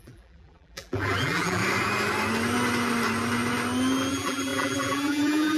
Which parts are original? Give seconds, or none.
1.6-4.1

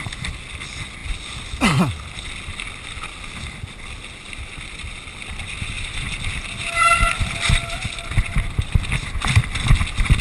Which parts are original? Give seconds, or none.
0.0-10.2

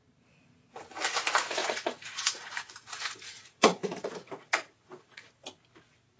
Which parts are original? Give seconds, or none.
0.0-1.6; 5.3-6.2

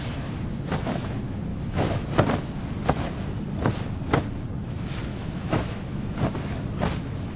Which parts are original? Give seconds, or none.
0.0-1.5; 2.0-5.1; 6.2-7.4

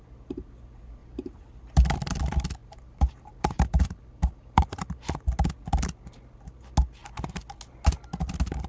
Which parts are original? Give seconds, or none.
0.0-1.0; 1.6-2.6; 4.9-8.7

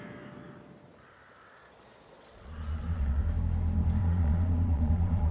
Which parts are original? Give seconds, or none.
0.0-1.6; 3.2-4.0

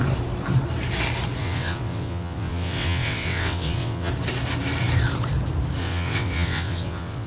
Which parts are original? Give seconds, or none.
0.0-1.4; 4.1-5.8